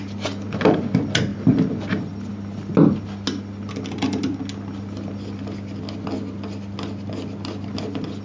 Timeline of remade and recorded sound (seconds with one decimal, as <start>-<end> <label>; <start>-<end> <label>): 0.0-8.2 recorded